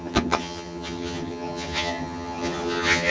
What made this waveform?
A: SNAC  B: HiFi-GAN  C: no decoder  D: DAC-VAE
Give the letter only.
B